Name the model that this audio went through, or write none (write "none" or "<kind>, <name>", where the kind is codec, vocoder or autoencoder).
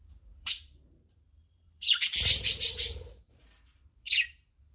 vocoder, BigVGAN v2